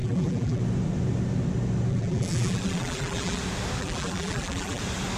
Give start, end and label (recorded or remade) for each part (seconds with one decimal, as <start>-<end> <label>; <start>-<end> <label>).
0.0-0.6 remade; 0.6-1.9 recorded; 1.9-3.4 remade; 3.4-3.8 recorded; 3.8-4.8 remade; 4.8-5.2 recorded